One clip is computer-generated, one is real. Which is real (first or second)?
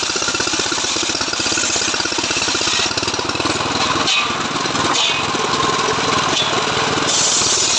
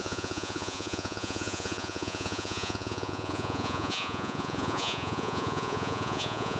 first